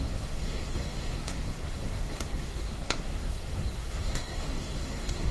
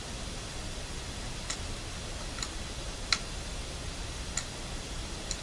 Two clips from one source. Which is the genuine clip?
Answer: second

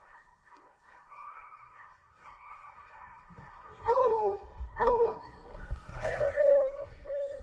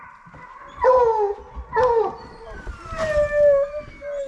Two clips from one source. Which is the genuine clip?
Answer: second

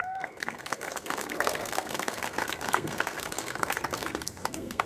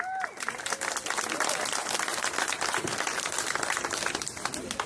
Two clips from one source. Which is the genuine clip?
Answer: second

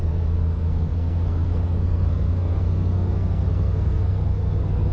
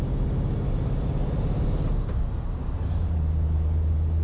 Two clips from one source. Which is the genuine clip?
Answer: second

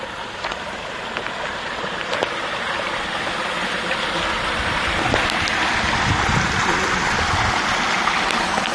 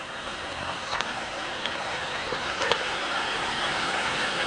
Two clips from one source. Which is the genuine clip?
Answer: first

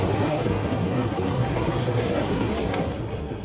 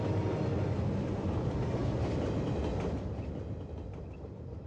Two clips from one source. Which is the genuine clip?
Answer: second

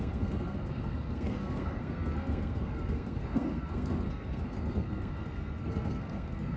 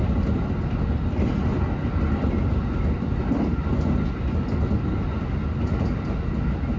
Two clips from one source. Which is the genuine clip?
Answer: second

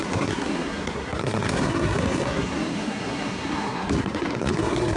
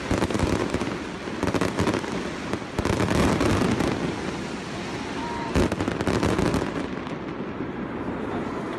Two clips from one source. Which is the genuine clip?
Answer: second